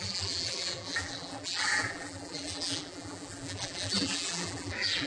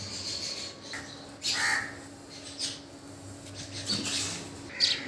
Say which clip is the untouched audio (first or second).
second